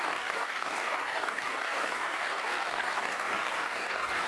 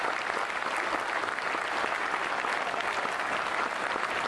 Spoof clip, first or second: first